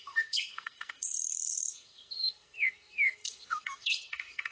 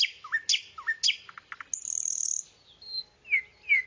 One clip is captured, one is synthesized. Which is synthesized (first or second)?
first